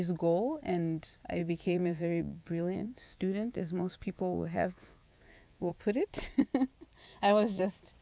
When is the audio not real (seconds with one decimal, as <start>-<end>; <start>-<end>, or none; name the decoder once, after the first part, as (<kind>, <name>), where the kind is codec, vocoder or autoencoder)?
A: 1.4-5.7 (vocoder, Vocos); 7.1-7.6